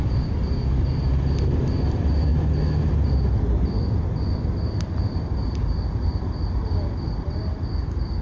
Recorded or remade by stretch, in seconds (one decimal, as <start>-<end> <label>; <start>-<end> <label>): 0.0-8.2 recorded